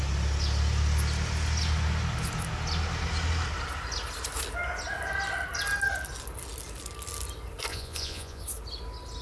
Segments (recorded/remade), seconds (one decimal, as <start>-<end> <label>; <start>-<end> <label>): 0.0-7.7 recorded; 7.7-8.4 remade; 8.4-9.2 recorded